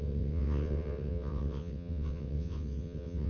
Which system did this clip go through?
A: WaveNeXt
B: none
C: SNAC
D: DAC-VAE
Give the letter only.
A